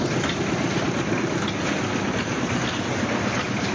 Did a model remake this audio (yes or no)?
no